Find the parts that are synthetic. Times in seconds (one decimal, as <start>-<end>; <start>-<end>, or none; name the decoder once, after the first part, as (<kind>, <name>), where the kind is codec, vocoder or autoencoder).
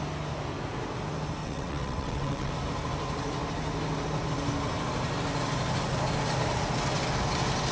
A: 1.4-2.5 (vocoder, WaveNeXt)